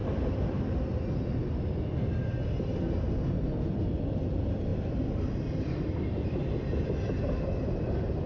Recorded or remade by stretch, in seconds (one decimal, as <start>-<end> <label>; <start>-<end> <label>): 0.0-0.6 remade; 0.6-4.7 recorded; 4.7-6.8 remade; 6.8-8.3 recorded

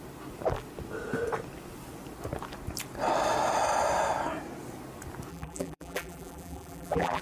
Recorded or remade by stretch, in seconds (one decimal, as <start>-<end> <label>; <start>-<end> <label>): 0.0-5.3 recorded; 5.3-7.2 remade

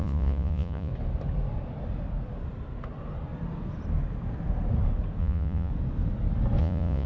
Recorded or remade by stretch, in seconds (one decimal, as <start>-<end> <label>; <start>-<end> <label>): 0.0-0.9 remade; 0.9-5.2 recorded; 5.2-5.7 remade; 5.7-6.6 recorded; 6.6-7.1 remade

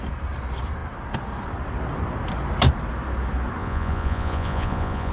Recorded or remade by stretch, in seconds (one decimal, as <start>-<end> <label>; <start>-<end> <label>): 0.0-3.6 recorded; 3.6-5.1 remade

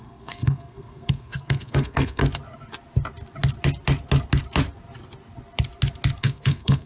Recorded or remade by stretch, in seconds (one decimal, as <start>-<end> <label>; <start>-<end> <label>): 0.0-2.2 remade; 2.2-6.2 recorded; 6.2-6.9 remade

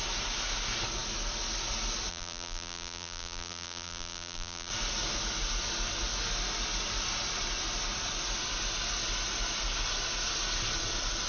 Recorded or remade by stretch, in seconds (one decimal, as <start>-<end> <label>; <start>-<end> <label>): 0.0-2.1 recorded; 2.1-4.7 remade; 4.7-11.3 recorded

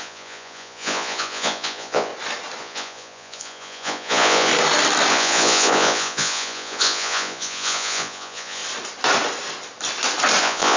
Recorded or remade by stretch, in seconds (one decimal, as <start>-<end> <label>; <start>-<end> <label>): 0.0-2.1 remade; 2.1-2.6 recorded; 2.6-4.5 remade; 4.5-5.1 recorded; 5.1-8.6 remade; 8.6-10.4 recorded; 10.4-10.8 remade

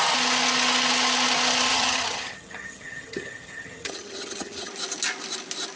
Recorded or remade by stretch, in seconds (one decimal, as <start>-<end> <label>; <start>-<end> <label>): 0.0-1.7 recorded; 1.7-4.7 remade; 4.7-5.8 recorded